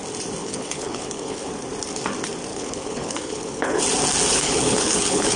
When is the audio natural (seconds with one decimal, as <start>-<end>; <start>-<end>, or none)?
0.0-0.4; 1.5-2.5; 3.8-4.3